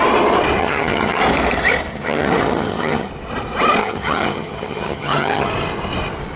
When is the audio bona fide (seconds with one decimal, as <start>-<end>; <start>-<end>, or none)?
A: 0.0-0.6; 1.2-1.9; 3.1-3.8; 5.5-6.4